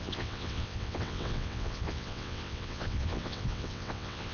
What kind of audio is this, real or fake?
fake